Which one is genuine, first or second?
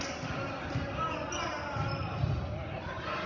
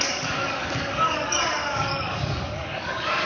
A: first